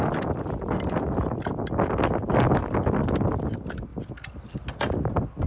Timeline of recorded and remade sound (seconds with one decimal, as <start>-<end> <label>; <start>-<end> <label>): 0.0-5.5 recorded